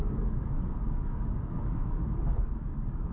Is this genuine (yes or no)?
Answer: no